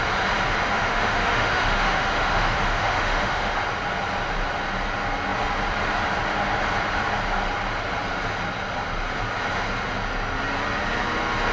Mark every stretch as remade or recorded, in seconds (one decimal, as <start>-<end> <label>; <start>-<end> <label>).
0.0-0.6 recorded; 0.6-3.6 remade; 3.6-11.5 recorded